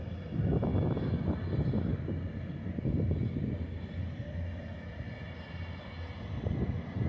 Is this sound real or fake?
real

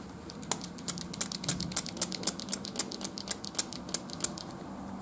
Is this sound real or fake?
real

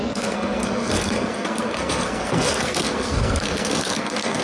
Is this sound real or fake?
fake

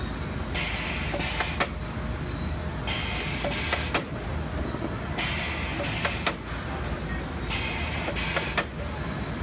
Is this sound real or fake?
real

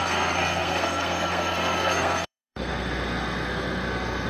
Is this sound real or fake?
fake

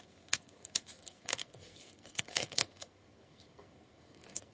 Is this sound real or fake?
fake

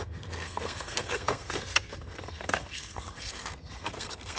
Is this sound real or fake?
fake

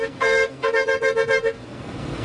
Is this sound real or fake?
fake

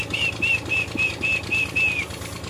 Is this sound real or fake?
real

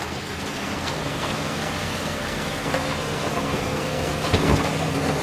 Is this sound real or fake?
fake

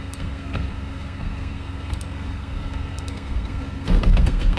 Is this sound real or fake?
fake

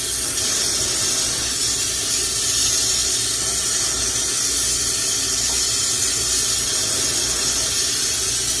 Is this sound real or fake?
real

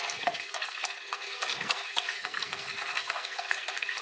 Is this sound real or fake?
fake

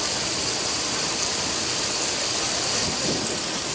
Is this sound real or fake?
real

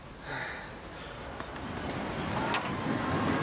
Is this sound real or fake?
real